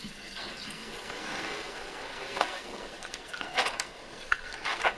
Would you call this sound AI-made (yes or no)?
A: yes